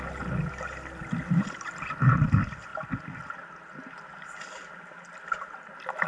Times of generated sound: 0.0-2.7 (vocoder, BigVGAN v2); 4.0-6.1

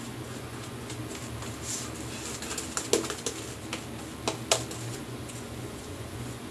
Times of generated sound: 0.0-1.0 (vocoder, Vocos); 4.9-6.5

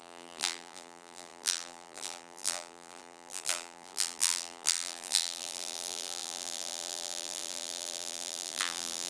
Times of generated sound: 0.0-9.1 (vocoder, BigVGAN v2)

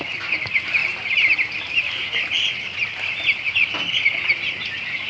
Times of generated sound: 0.8-3.9 (vocoder, BigVGAN v2)